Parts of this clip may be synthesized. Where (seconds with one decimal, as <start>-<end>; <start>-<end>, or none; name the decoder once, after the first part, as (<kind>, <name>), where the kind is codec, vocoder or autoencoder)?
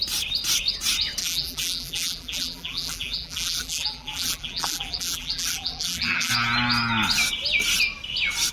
1.2-6.3 (vocoder, BigVGAN v2)